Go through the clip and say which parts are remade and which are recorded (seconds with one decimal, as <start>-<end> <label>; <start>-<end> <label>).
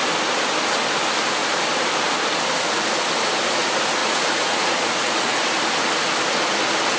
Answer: 0.0-4.0 recorded; 4.0-5.4 remade; 5.4-7.0 recorded